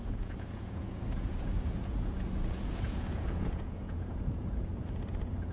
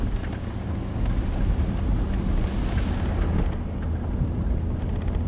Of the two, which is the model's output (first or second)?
first